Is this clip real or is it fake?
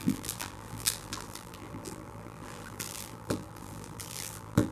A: fake